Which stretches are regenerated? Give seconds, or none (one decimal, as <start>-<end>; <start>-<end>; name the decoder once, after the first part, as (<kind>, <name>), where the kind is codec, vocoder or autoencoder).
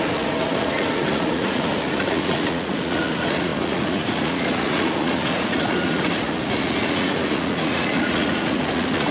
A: 0.0-9.1 (vocoder, Vocos)